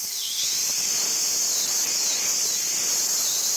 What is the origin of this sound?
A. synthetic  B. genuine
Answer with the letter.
B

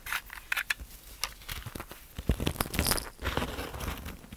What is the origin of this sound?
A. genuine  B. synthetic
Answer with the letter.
A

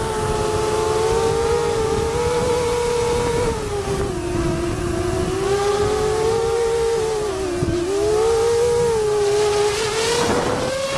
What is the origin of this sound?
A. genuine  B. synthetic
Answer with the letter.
A